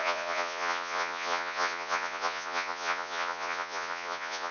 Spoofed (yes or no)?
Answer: yes